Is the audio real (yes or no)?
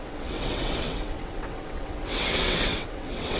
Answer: no